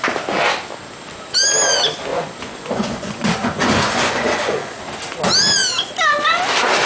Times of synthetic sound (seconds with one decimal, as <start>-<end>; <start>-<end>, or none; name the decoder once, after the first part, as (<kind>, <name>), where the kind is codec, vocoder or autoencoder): 2.1-4.8 (vocoder, Vocos)